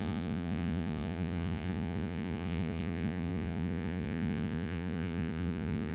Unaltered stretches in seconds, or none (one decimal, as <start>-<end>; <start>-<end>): none